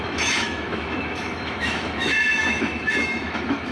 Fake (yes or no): yes